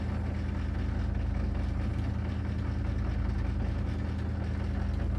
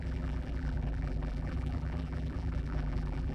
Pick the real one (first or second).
first